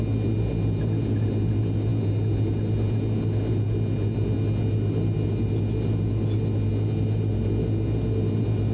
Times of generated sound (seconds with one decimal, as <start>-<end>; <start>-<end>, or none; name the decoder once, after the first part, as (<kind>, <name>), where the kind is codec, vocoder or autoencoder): none